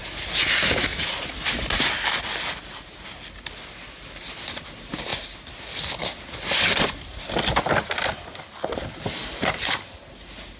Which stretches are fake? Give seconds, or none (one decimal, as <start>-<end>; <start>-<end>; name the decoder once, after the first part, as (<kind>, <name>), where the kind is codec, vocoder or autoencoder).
none